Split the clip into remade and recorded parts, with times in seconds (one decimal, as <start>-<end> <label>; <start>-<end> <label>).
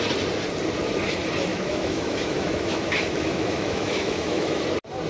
0.0-1.5 recorded; 1.5-4.6 remade; 4.6-5.1 recorded